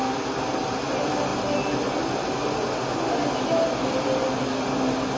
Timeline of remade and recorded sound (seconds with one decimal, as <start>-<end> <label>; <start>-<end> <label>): 0.0-5.2 recorded